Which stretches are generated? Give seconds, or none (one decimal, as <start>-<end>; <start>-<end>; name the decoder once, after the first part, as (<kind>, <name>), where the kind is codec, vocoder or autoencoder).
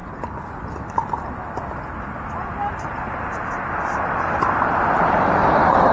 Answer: none